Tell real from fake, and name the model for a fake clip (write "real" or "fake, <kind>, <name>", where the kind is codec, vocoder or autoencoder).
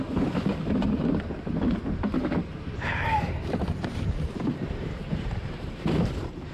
fake, vocoder, BigVGAN v2